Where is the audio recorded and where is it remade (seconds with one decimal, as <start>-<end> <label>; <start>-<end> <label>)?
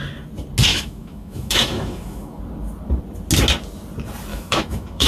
0.0-0.7 recorded; 0.7-2.4 remade; 2.4-4.3 recorded; 4.3-5.1 remade